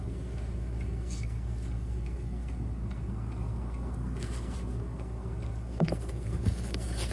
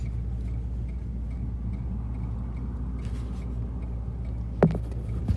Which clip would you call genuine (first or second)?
second